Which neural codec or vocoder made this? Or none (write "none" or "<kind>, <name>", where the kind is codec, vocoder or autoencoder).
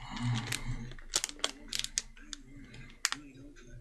none